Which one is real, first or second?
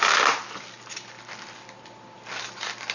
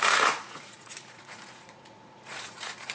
first